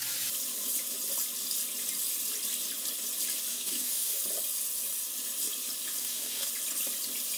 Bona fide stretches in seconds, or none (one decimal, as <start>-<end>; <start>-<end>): 0.0-3.5; 4.2-6.0; 6.5-7.4